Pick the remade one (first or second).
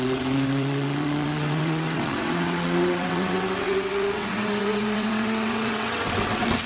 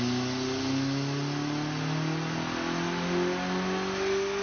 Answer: first